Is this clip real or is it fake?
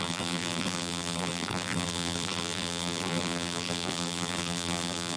fake